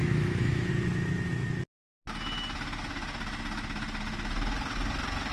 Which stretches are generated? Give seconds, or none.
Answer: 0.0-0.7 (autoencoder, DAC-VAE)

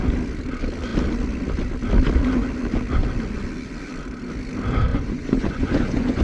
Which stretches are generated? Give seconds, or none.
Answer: 4.9-6.2 (vocoder, Vocos)